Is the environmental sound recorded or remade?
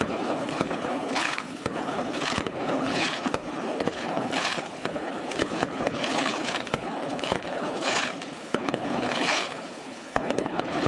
remade